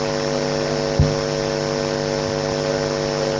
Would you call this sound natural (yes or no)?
yes